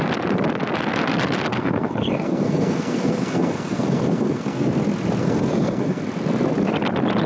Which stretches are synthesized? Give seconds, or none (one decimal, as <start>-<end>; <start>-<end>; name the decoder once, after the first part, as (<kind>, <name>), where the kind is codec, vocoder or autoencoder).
1.5-4.7 (codec, SNAC); 5.2-6.0